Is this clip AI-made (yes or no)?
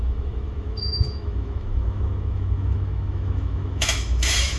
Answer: yes